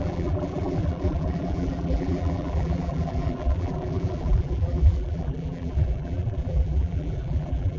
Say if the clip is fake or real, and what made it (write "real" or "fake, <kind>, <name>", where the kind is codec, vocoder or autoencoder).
fake, vocoder, BigVGAN v2